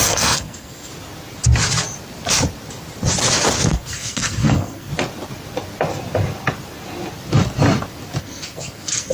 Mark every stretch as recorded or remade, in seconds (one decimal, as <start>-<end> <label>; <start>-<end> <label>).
0.0-0.9 remade; 0.9-3.7 recorded; 3.7-4.9 remade; 4.9-8.2 recorded; 8.2-9.1 remade